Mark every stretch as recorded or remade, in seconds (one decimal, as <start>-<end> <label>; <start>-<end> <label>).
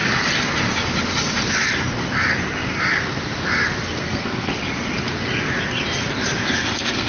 0.0-4.0 recorded; 4.0-4.5 remade; 4.5-6.4 recorded; 6.4-7.1 remade